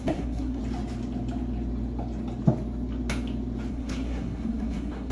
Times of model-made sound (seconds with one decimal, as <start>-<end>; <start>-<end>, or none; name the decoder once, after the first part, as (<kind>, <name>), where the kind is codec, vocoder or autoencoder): 0.0-0.6 (codec, SNAC); 3.7-5.1